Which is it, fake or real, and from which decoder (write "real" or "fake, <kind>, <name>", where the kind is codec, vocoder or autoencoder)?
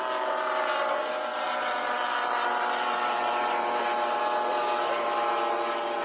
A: real